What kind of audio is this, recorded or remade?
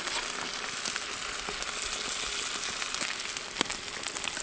recorded